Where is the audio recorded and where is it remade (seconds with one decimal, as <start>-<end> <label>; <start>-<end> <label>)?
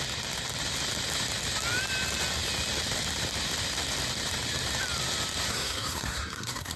0.0-5.5 recorded; 5.5-6.8 remade